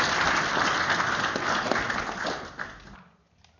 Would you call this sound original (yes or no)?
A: yes